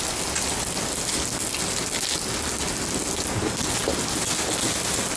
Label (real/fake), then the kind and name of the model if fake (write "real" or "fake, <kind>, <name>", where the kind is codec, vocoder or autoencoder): real